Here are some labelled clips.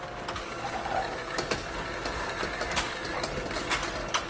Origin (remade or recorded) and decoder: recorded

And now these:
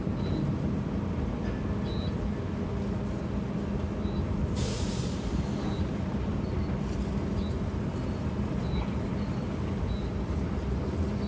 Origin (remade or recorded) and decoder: recorded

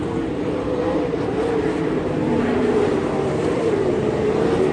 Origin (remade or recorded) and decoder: remade, vocoder, BigVGAN v2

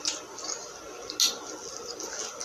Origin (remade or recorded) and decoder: recorded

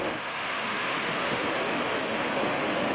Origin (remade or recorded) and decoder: remade, autoencoder, DAC-VAE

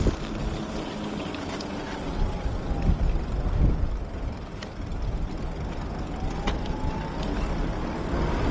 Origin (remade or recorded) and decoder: recorded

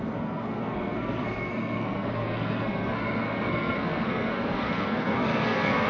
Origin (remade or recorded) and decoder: remade, codec, SNAC